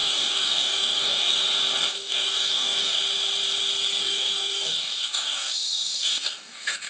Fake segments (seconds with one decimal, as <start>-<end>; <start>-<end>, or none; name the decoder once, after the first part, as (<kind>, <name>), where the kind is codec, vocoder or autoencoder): 0.0-1.4 (codec, DAC); 1.9-3.0; 4.0-6.9